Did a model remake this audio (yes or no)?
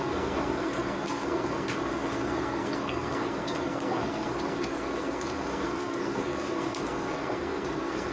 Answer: yes